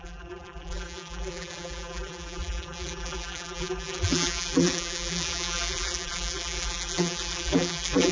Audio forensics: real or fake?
fake